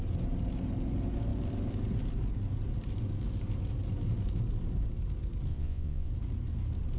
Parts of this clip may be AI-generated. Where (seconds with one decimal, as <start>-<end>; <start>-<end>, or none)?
5.5-6.1